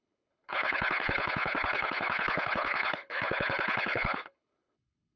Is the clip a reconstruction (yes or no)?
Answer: yes